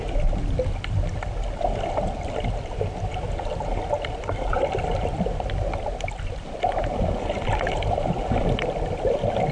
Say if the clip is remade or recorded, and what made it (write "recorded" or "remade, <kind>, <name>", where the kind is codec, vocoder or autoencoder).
recorded